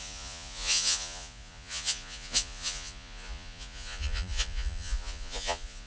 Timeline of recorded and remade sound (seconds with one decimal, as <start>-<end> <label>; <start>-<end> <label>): 0.0-5.9 remade